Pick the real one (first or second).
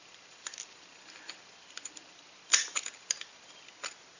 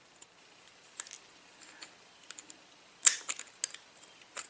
second